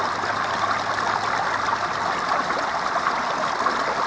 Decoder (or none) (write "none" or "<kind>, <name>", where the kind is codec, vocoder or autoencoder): none